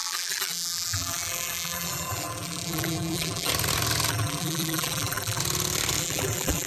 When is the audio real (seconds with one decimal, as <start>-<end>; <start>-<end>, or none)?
3.5-4.1; 5.4-6.0